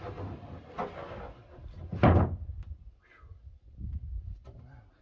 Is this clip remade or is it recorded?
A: recorded